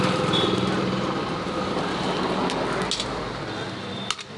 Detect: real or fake real